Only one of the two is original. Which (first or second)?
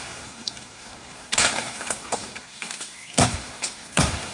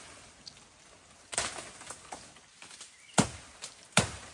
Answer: second